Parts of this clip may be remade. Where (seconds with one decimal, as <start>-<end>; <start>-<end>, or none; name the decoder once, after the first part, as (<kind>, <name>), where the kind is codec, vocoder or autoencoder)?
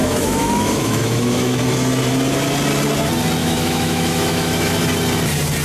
0.0-1.6 (autoencoder, DAC-VAE); 3.4-4.8